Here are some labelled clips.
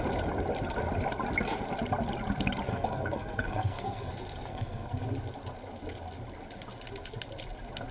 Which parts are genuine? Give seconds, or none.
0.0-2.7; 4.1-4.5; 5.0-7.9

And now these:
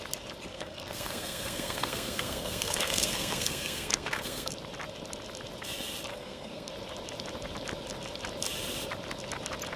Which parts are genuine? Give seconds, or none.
0.0-0.5; 4.5-6.1; 6.7-9.8

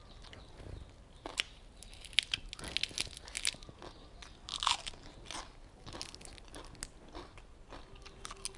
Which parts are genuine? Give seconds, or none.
0.0-8.6

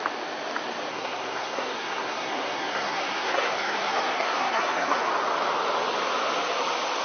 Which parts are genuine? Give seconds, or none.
0.0-0.9; 5.0-7.0

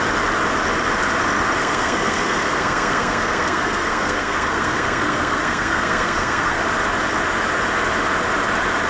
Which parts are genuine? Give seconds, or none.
0.0-1.6; 6.6-8.9

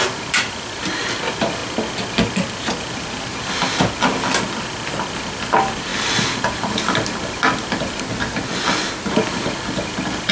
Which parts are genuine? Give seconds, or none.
0.0-10.3

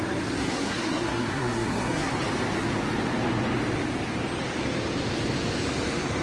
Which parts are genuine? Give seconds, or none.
0.0-0.4; 2.1-6.2